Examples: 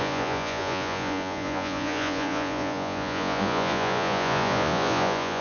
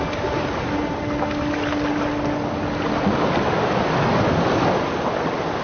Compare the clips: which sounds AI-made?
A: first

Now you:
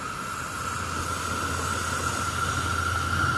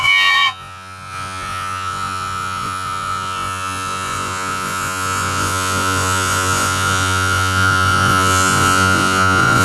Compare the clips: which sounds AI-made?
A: second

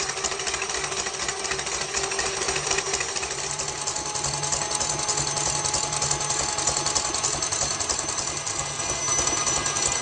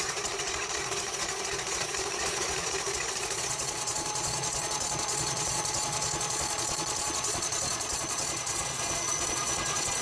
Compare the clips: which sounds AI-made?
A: second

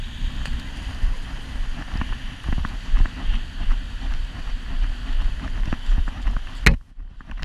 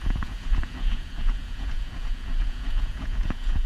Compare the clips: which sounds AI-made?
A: second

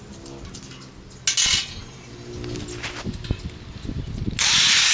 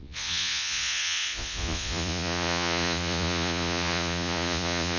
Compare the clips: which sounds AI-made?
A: second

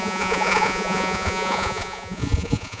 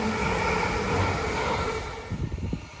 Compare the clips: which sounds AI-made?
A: first